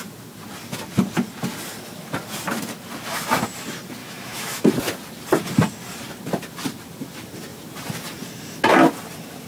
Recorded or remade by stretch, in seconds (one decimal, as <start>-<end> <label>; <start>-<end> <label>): 0.0-4.0 recorded; 4.0-4.7 remade; 4.7-9.5 recorded